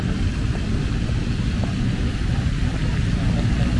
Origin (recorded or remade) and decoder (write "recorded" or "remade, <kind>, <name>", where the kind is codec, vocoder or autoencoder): recorded